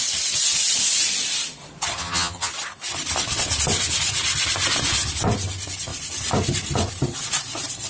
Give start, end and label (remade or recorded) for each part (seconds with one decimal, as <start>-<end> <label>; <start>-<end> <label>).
0.0-2.0 recorded; 2.0-2.5 remade; 2.5-7.9 recorded